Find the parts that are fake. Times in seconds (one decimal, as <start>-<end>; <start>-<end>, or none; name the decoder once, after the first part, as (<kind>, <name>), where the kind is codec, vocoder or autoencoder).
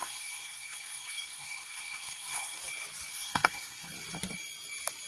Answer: 0.0-2.6 (codec, SNAC); 3.1-3.9